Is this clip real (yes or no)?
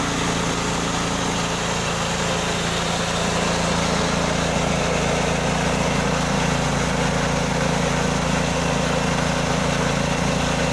yes